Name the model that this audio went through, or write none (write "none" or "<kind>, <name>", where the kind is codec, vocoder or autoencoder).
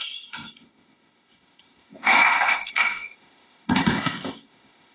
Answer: codec, ZipCodec